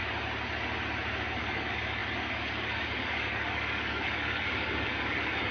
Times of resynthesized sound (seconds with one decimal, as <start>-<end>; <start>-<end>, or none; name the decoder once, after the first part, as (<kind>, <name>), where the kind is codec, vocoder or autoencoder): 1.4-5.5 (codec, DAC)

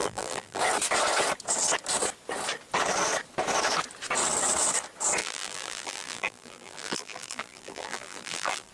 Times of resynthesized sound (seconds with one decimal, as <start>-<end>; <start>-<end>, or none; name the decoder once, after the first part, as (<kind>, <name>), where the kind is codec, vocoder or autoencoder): 0.0-0.6 (vocoder, BigVGAN v2); 5.2-8.7

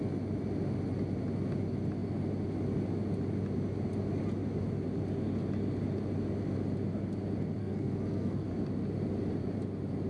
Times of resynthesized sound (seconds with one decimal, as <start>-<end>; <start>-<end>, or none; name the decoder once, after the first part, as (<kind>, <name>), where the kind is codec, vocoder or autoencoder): 7.6-8.5 (codec, SNAC)